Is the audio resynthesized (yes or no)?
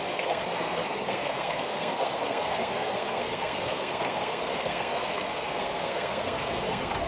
yes